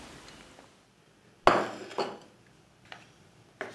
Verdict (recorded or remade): recorded